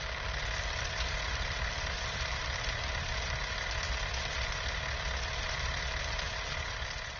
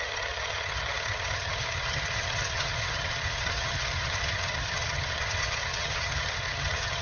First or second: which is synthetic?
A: second